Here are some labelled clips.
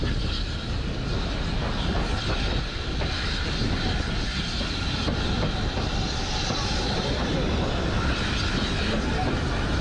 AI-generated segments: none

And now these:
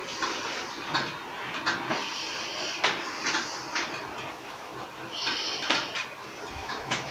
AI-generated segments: 4.3-4.7 (autoencoder, DAC-VAE); 6.5-7.1

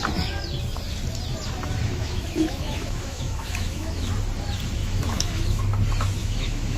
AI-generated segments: 1.9-4.1 (autoencoder, DAC-VAE); 4.8-5.6; 6.2-6.8

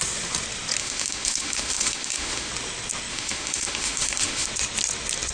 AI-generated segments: 0.8-2.5 (autoencoder, DAC-VAE); 3.1-4.5

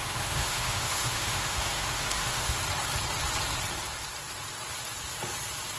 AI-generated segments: 0.0-2.6 (autoencoder, DAC-VAE)

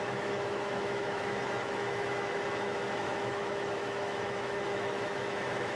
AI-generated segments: 0.0-5.8 (autoencoder, DAC-VAE)

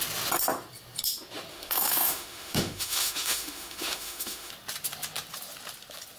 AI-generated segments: 1.5-4.5 (autoencoder, DAC-VAE)

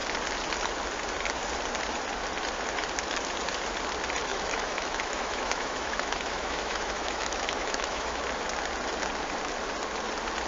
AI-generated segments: 4.3-8.2 (autoencoder, DAC-VAE)